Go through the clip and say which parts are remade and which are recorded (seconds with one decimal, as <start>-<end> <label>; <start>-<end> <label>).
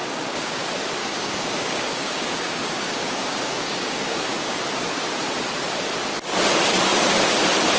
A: 0.0-0.6 remade; 0.6-1.0 recorded; 1.0-4.6 remade; 4.6-7.8 recorded